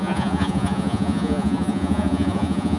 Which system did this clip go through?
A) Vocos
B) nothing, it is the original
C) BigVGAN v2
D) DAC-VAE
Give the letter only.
A